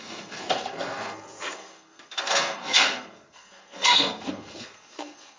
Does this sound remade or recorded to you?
remade